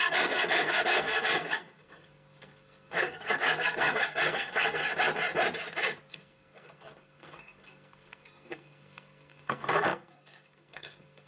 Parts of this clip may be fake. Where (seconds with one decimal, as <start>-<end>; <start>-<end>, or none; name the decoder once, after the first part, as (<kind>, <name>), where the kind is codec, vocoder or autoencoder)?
0.0-4.8 (codec, SNAC); 6.1-11.3